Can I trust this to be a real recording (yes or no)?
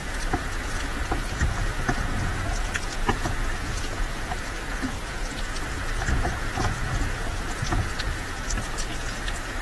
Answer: no